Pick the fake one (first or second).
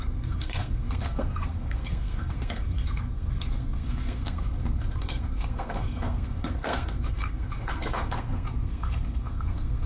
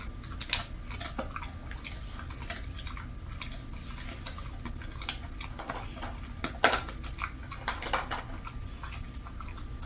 first